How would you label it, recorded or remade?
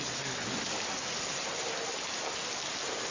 recorded